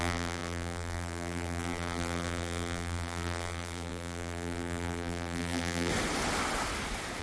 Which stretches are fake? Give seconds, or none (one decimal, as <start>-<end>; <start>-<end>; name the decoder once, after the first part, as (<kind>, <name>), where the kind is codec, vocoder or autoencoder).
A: 0.0-5.9 (vocoder, BigVGAN v2)